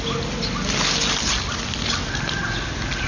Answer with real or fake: real